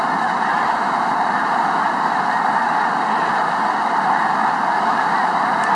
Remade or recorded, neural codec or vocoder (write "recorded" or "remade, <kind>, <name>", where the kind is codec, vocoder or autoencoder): recorded